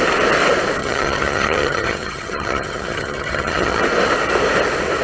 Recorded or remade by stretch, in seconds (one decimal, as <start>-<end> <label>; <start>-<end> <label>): 0.0-0.8 recorded; 0.8-3.8 remade; 3.8-5.0 recorded